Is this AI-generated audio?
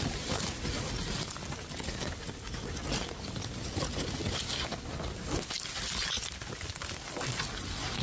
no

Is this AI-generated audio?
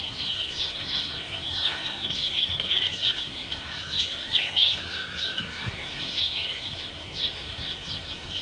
yes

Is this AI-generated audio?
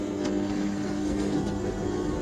yes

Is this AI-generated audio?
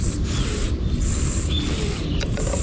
no